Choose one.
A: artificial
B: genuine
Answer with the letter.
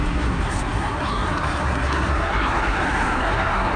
A